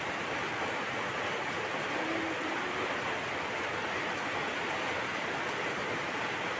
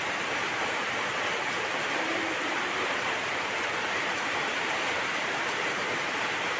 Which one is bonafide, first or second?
first